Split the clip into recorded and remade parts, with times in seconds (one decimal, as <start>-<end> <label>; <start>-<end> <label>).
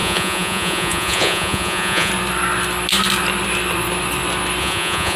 0.0-2.1 remade; 2.1-4.6 recorded; 4.6-5.2 remade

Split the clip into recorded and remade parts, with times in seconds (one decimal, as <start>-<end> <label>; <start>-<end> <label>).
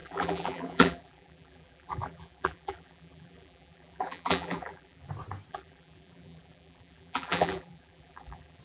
0.0-5.1 remade; 5.1-5.5 recorded; 5.5-8.6 remade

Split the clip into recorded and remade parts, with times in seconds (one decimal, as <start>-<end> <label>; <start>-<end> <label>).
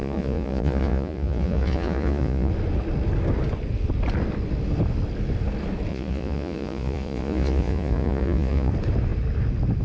0.0-2.5 remade; 2.5-5.9 recorded; 5.9-8.7 remade; 8.7-9.8 recorded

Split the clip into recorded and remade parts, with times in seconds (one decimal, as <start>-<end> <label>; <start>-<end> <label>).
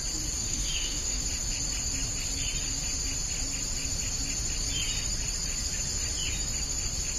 0.0-0.4 recorded; 0.4-1.2 remade; 1.2-7.2 recorded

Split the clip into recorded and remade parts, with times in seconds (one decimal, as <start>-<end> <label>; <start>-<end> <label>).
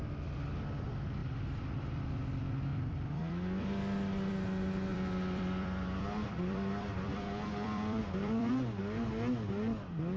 0.0-1.2 recorded; 1.2-2.1 remade; 2.1-2.7 recorded; 2.7-4.3 remade; 4.3-4.9 recorded; 4.9-8.5 remade; 8.5-10.2 recorded